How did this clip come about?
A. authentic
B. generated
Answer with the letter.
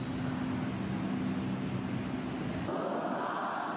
A